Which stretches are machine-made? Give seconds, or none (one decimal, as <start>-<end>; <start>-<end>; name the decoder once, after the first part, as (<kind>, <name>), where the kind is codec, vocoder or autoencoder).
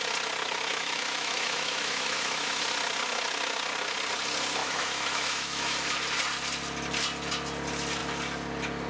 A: 0.7-2.6 (autoencoder, DAC-VAE); 4.6-5.8